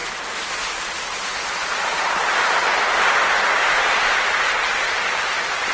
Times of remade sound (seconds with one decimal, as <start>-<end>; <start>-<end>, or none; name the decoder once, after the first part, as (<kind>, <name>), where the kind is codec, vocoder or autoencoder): 1.6-5.0 (vocoder, BigVGAN v2)